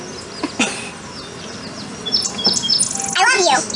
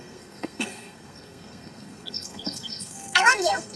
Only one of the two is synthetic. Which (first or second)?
second